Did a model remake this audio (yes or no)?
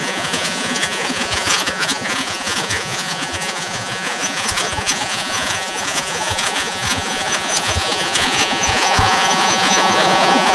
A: yes